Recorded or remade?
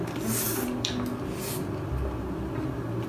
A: recorded